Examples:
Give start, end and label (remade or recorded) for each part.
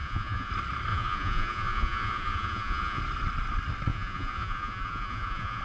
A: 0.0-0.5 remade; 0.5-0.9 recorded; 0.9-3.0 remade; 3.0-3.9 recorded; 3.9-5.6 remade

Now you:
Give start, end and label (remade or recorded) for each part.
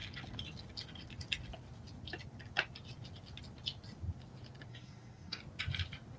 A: 0.0-4.7 recorded; 4.7-5.4 remade; 5.4-6.2 recorded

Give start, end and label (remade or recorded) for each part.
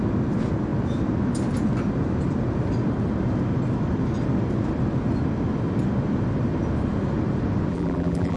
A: 0.0-7.7 recorded; 7.7-8.4 remade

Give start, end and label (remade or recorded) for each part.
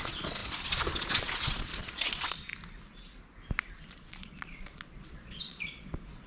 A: 0.0-2.5 remade; 2.5-3.9 recorded; 3.9-6.3 remade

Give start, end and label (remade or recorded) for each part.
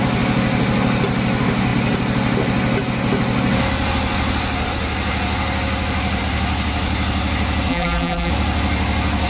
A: 0.0-7.7 recorded; 7.7-8.3 remade; 8.3-9.3 recorded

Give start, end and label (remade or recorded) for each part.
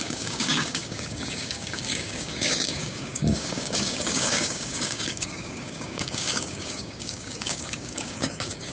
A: 0.0-8.7 remade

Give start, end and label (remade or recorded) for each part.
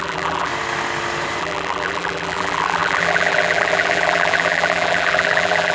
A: 0.0-0.5 remade; 0.5-1.4 recorded; 1.4-5.7 remade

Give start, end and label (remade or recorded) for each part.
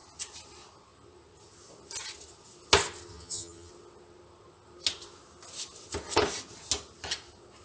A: 0.0-3.1 recorded; 3.1-3.7 remade; 3.7-7.6 recorded